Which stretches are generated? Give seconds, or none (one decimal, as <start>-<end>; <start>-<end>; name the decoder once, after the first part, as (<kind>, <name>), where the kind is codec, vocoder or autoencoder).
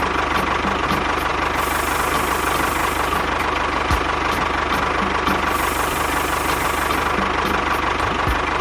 2.8-3.4 (vocoder, BigVGAN v2)